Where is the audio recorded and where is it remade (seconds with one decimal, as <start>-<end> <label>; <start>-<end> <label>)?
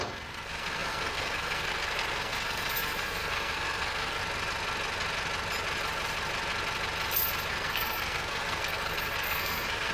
0.0-4.2 remade; 4.2-7.5 recorded; 7.5-9.9 remade